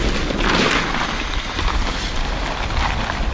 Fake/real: real